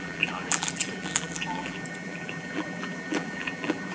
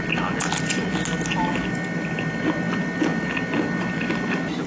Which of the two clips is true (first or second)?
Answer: second